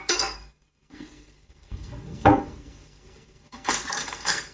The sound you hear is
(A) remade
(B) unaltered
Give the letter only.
A